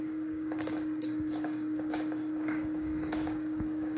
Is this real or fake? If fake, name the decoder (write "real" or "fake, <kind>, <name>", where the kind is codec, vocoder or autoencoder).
fake, codec, DAC